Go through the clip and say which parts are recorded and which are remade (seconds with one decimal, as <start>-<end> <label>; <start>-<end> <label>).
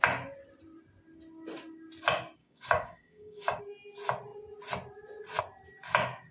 0.0-2.4 recorded; 2.4-3.6 remade; 3.6-6.3 recorded